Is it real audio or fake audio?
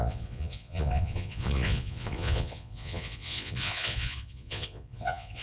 fake